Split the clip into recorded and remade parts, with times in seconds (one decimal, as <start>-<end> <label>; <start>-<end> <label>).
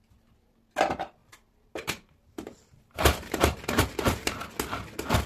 0.0-1.2 recorded; 1.2-4.4 remade; 4.4-5.3 recorded